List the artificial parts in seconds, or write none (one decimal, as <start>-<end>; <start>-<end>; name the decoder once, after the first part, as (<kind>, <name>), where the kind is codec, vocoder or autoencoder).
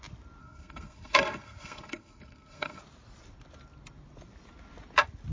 0.4-2.8 (codec, SNAC)